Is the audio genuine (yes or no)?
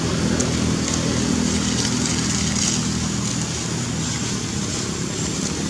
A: yes